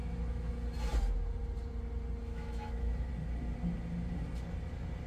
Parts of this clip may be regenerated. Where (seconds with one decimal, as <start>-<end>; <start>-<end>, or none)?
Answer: 0.0-0.5; 2.2-3.1